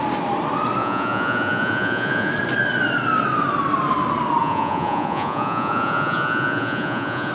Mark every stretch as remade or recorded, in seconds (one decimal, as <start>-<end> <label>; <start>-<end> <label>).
0.0-0.8 recorded; 0.8-2.3 remade; 2.3-4.4 recorded; 4.4-7.3 remade

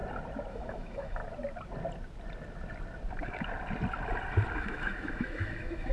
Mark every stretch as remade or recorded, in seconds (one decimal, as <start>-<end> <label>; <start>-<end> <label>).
0.0-0.5 recorded; 0.5-1.2 remade; 1.2-4.5 recorded; 4.5-5.9 remade

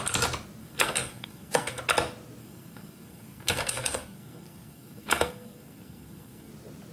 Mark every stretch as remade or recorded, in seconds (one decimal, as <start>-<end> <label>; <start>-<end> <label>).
0.0-0.6 recorded; 0.6-1.8 remade; 1.8-2.4 recorded; 2.4-6.5 remade; 6.5-6.9 recorded

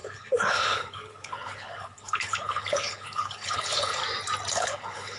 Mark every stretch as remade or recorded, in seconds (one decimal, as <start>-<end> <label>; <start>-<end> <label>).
0.0-4.0 remade; 4.0-4.5 recorded; 4.5-5.2 remade